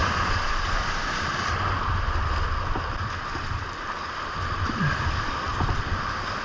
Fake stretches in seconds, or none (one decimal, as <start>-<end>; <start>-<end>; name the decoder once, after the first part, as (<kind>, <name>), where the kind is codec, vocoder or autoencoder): none